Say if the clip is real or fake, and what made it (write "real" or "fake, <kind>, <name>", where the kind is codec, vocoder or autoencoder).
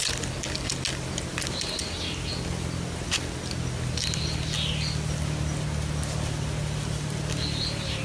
real